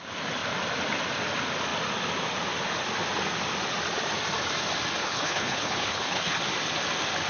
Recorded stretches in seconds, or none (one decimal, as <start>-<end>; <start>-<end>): 0.0-5.0; 6.4-7.3